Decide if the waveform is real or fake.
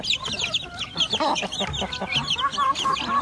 real